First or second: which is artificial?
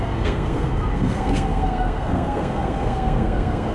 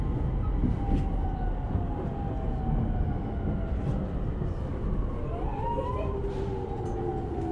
first